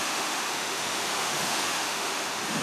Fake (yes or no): yes